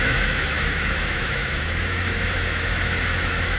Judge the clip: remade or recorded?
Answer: remade